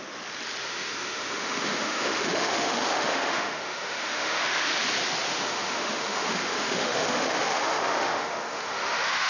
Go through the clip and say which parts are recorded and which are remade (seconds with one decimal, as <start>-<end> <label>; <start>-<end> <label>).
0.0-0.6 recorded; 0.6-4.8 remade; 4.8-5.3 recorded; 5.3-9.3 remade